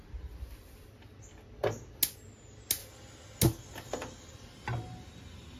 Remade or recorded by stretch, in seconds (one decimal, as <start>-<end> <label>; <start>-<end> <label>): 0.0-5.6 recorded